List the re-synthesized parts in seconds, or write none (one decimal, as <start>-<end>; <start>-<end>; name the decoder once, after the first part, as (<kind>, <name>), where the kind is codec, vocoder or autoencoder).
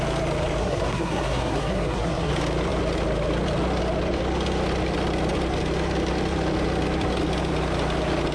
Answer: 0.6-2.3 (codec, SNAC)